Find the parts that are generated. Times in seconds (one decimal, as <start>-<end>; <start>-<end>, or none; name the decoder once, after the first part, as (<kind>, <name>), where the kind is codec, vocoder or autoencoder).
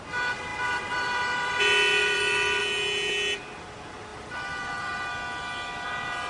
0.5-1.6 (vocoder, BigVGAN v2); 2.0-2.6; 4.1-5.1